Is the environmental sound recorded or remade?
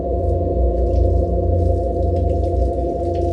recorded